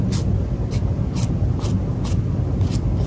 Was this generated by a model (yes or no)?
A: no